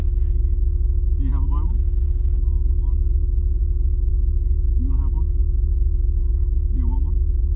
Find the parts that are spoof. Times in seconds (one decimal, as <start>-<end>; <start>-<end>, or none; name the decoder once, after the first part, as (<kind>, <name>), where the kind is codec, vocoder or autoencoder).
4.7-5.4 (autoencoder, DAC-VAE); 6.2-7.1